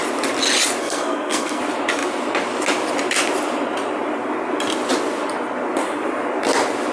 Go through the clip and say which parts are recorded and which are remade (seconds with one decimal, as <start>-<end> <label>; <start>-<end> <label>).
0.0-0.8 recorded; 0.8-1.6 remade; 1.6-6.9 recorded